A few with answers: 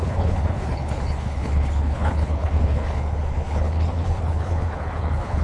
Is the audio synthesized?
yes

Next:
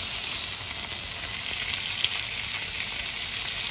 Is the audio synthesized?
no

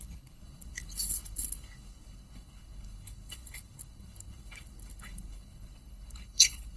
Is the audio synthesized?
yes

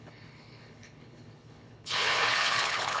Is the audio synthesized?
yes